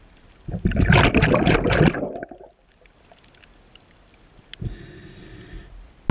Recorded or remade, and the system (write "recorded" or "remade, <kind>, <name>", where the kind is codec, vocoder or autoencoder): recorded